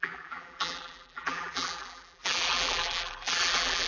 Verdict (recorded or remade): remade